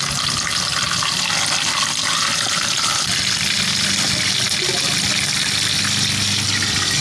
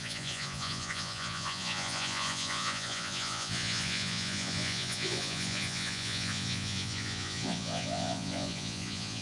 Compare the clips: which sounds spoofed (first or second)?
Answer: second